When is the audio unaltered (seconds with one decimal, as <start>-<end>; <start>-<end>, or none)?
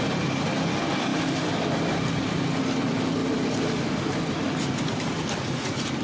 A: 0.0-6.0